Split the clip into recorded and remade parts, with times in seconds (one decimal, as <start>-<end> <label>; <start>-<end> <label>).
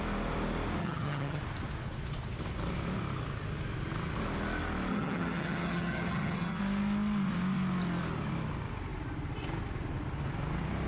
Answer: 0.0-0.8 recorded; 0.8-1.4 remade; 1.4-4.9 recorded; 4.9-6.6 remade; 6.6-10.9 recorded